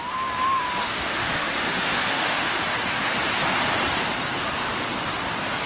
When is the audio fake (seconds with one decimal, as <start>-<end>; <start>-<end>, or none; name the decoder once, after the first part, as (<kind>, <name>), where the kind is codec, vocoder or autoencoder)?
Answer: 0.8-2.6 (autoencoder, DAC-VAE)